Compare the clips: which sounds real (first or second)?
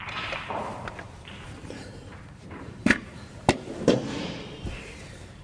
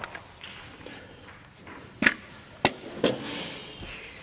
second